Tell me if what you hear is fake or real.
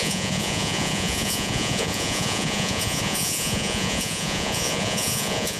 fake